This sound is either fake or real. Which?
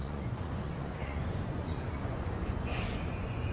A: fake